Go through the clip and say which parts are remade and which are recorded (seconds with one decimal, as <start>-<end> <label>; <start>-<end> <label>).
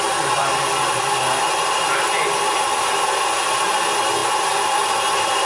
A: 0.0-5.5 recorded